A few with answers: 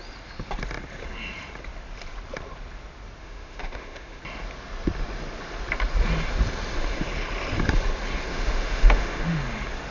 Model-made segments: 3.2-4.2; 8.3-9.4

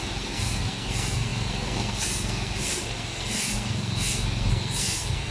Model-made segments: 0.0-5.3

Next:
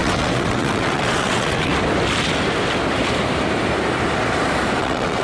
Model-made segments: 0.0-1.7; 4.8-5.2

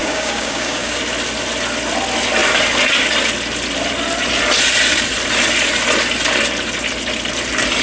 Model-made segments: 0.0-1.0

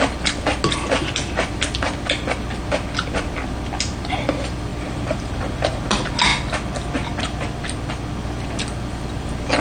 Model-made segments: 4.7-5.8